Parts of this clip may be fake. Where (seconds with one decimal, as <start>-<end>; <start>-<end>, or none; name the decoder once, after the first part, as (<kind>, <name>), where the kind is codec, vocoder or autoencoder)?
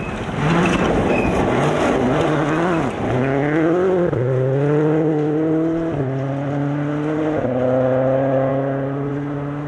none